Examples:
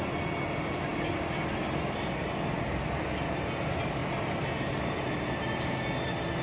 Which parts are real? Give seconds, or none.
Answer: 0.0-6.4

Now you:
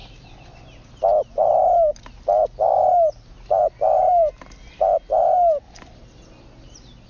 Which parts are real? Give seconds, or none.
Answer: 0.0-7.1

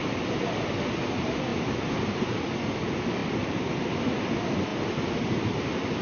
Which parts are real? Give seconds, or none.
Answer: 0.0-1.5; 2.3-3.2; 3.9-6.0

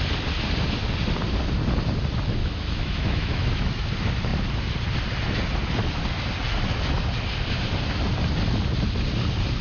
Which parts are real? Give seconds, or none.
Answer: 0.0-2.4; 3.9-9.6